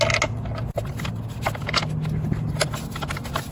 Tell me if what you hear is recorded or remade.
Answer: recorded